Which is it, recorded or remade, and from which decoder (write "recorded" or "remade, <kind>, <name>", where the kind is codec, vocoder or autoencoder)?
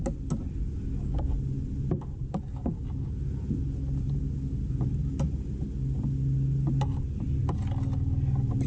recorded